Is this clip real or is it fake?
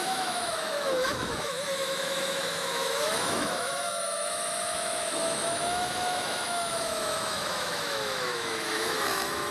fake